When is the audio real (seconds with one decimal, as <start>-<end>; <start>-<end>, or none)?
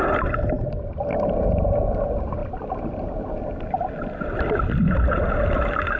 0.0-2.4; 3.5-6.0